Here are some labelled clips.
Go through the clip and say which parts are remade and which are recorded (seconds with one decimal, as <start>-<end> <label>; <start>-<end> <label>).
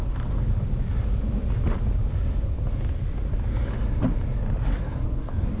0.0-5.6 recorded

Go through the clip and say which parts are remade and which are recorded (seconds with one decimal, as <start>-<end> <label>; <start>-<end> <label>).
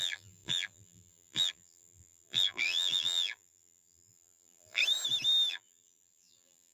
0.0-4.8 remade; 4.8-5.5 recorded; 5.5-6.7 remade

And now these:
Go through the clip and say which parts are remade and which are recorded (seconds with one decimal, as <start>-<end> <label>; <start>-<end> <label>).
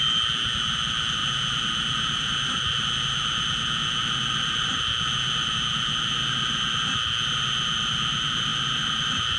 0.0-9.4 recorded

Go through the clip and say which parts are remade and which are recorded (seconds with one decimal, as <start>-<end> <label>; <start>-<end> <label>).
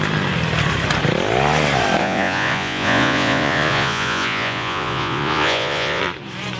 0.0-2.0 recorded; 2.0-6.0 remade; 6.0-6.6 recorded